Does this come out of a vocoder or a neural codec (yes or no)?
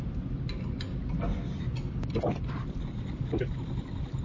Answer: no